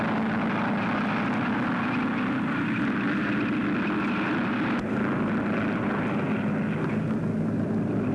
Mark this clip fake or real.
real